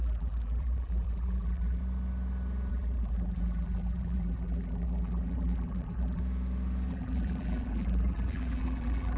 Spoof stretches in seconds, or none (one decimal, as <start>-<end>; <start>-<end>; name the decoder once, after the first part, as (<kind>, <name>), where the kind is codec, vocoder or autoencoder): 0.0-1.8 (vocoder, BigVGAN v2); 2.7-6.2; 6.9-9.2